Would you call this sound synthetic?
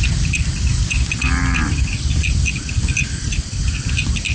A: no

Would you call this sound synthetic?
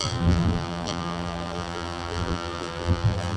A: yes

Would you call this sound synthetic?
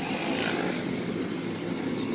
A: no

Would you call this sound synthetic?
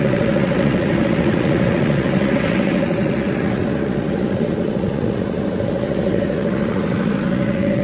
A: yes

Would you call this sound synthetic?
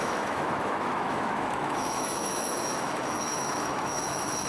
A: yes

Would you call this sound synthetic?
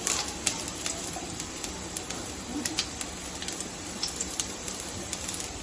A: yes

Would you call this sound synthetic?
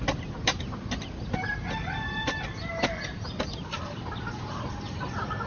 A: no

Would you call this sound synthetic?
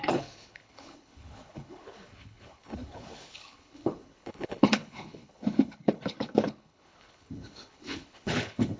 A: yes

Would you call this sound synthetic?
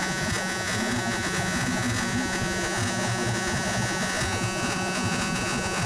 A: yes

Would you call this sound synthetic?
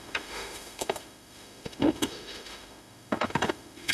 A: yes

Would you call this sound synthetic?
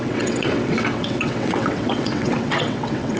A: yes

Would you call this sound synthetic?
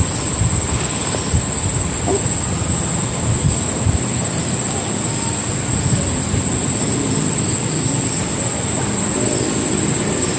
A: no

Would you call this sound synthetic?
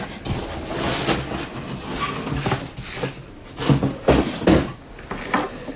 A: no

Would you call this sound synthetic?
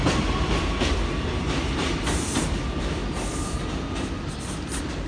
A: no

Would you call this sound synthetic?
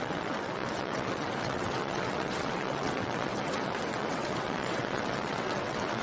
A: yes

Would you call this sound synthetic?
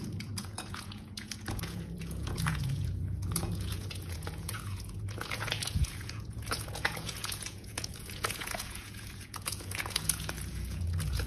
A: yes